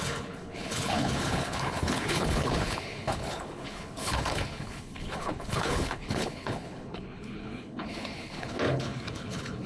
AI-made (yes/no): yes